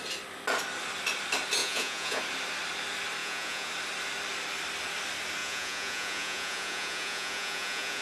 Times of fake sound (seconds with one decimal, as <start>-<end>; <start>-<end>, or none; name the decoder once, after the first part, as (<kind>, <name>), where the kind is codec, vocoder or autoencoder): 1.6-2.2 (vocoder, Vocos); 3.2-3.7; 5.4-8.0

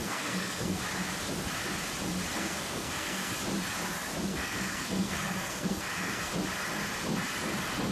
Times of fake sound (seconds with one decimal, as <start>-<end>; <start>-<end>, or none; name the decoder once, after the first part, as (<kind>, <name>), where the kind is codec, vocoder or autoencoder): 0.0-0.8 (codec, SNAC); 2.3-3.3; 4.3-6.3

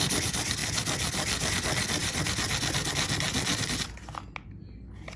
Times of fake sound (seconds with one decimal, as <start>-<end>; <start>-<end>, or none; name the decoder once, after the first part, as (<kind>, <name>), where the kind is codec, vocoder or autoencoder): none

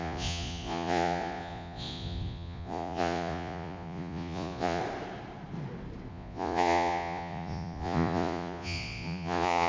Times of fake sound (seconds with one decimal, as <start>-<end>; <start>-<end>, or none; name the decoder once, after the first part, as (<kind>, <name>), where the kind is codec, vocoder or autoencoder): 0.0-4.8 (vocoder, Vocos); 6.1-9.7

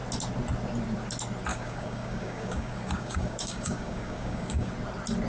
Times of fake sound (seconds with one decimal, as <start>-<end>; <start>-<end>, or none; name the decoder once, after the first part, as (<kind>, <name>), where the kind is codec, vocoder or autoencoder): 1.5-4.7 (codec, DAC)

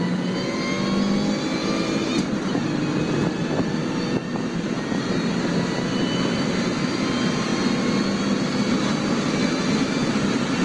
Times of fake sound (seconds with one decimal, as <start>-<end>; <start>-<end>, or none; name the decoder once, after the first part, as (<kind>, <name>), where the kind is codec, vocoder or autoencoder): none